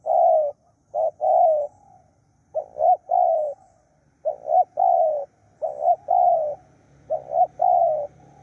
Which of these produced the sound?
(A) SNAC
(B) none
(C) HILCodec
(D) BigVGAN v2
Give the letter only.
B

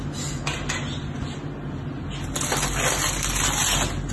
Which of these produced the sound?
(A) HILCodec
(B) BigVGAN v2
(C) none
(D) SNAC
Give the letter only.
C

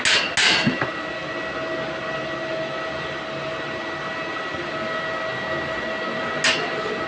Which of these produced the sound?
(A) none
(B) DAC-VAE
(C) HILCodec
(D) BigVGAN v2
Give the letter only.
A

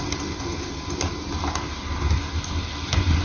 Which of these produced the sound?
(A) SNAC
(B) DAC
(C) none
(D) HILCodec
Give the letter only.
C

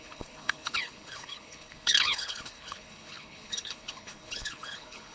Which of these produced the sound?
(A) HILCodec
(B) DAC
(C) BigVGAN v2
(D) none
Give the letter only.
A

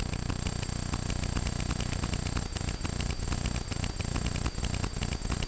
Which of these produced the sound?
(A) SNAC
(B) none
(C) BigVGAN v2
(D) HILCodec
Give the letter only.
B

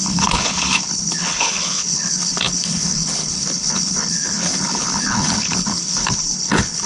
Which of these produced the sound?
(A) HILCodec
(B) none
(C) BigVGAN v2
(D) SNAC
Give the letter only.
A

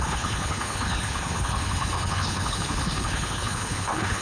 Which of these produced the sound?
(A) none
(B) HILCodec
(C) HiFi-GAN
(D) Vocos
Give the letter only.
B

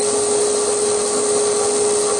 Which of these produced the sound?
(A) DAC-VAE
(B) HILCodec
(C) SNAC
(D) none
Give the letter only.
D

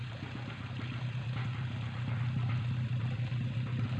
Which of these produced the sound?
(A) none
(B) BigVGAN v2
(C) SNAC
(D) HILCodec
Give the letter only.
A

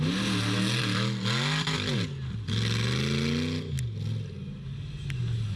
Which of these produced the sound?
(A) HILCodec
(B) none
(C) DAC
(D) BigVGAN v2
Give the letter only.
B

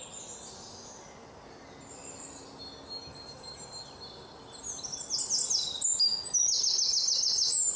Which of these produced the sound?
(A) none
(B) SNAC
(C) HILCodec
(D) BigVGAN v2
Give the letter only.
A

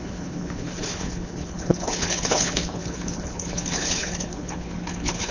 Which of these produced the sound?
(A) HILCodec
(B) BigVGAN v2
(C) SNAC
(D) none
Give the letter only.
A